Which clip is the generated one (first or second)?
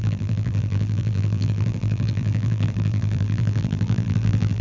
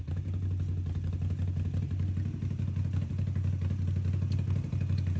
first